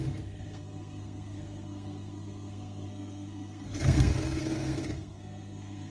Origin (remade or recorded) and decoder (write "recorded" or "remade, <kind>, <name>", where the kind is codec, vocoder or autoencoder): remade, codec, SNAC